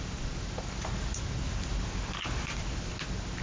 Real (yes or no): yes